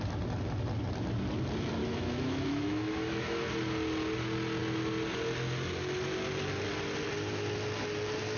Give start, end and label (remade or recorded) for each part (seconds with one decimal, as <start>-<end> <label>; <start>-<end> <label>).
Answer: 0.0-1.8 recorded; 1.8-3.4 remade; 3.4-8.4 recorded